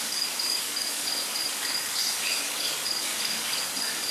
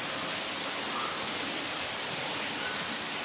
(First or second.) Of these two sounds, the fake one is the first